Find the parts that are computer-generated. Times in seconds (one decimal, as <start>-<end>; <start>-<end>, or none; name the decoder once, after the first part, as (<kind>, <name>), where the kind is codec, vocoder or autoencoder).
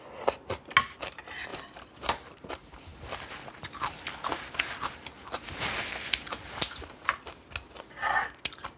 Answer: 1.5-2.5 (vocoder, BigVGAN v2); 5.1-5.7